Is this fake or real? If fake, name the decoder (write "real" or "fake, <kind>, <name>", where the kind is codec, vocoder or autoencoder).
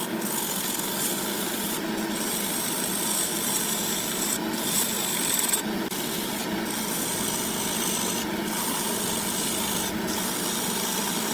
real